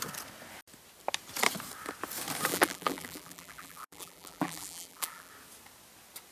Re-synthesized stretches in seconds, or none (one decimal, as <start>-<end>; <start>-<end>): 2.5-5.3